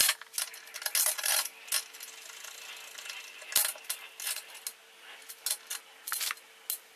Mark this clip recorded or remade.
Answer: recorded